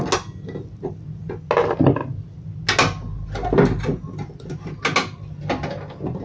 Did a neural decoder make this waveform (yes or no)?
no